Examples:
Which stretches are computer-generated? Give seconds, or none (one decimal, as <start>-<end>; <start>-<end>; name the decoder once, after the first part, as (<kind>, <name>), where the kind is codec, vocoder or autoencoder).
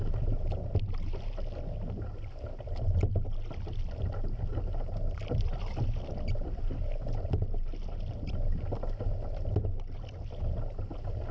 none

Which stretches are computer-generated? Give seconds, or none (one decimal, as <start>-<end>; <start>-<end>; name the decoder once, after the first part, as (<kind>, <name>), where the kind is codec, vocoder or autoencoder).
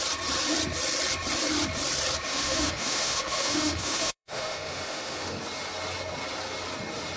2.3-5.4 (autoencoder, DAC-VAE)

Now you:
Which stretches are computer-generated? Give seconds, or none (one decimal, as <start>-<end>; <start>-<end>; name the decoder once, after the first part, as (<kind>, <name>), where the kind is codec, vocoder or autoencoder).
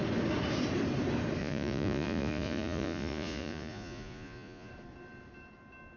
1.4-4.7 (vocoder, Vocos)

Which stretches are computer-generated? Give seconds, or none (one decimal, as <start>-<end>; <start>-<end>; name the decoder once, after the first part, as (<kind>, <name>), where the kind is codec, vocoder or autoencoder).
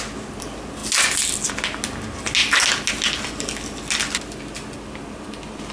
none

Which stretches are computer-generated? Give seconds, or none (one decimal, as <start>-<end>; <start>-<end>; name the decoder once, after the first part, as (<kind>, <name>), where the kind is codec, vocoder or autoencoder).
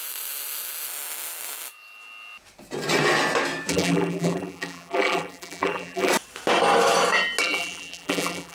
3.7-6.1 (vocoder, BigVGAN v2); 7.4-8.5